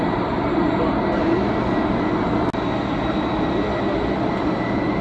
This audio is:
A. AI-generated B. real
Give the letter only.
B